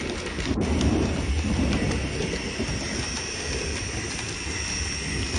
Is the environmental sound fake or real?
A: real